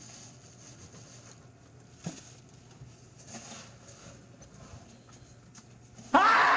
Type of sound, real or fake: real